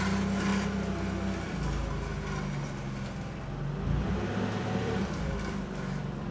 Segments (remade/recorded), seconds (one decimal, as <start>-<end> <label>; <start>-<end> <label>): 0.0-0.5 remade; 0.5-4.3 recorded; 4.3-6.3 remade